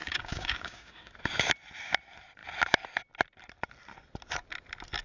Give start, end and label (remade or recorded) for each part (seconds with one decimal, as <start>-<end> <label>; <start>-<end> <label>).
0.0-1.1 remade; 1.1-5.0 recorded